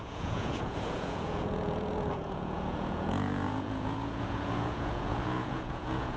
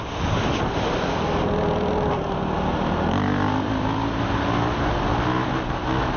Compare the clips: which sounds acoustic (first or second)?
second